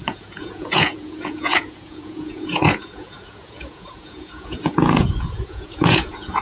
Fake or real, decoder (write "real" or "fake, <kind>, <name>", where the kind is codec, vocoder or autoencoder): fake, vocoder, Vocos